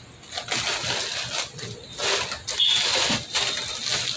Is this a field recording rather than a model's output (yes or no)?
yes